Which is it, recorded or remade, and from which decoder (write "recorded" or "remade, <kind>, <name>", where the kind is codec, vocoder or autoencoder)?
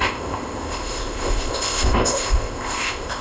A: remade, codec, ZipCodec